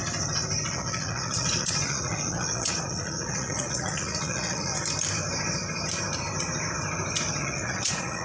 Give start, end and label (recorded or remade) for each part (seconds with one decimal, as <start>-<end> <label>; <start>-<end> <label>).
0.0-0.7 recorded; 0.7-4.7 remade; 4.7-7.4 recorded; 7.4-8.2 remade